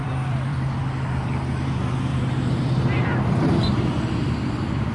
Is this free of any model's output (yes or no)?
no